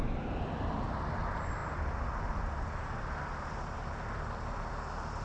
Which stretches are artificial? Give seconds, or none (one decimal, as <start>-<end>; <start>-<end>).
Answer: none

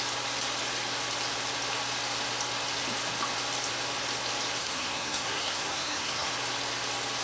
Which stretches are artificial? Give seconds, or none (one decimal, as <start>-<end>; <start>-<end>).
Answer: 4.6-6.3